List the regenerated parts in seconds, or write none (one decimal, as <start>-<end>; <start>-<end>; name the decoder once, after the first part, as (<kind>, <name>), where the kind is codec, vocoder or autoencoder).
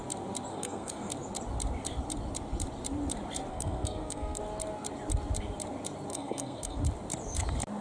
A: 0.5-1.1 (codec, SNAC); 3.5-4.4; 6.1-6.8